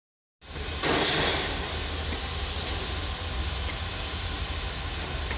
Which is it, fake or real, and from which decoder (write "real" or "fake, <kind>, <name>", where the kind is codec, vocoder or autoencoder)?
real